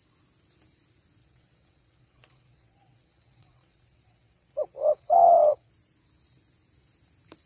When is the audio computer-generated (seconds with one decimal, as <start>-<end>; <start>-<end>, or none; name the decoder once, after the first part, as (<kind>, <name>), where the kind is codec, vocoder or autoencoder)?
1.2-5.7 (vocoder, WaveNeXt)